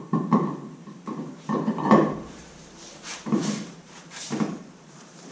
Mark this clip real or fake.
fake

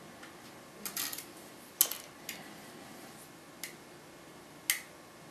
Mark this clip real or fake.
real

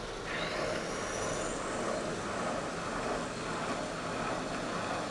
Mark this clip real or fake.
real